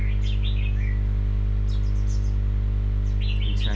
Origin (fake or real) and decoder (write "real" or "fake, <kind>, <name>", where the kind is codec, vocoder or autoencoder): real